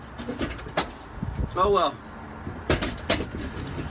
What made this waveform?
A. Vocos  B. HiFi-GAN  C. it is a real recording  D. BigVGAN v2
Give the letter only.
C